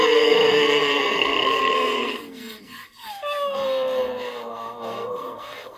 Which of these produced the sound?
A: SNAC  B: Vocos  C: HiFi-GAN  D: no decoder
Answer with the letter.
A